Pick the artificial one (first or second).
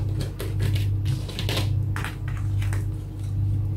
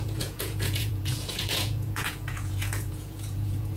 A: second